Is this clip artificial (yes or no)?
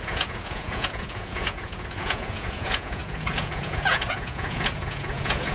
yes